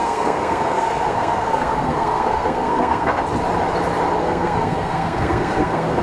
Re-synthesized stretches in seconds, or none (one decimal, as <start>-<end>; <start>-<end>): 0.0-3.2; 4.2-6.0